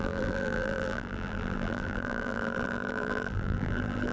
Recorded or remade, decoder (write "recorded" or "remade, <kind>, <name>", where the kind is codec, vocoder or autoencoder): remade, vocoder, BigVGAN v2